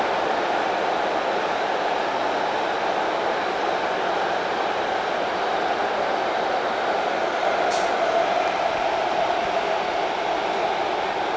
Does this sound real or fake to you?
real